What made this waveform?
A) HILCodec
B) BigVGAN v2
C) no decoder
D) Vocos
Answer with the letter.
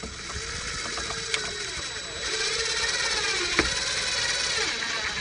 C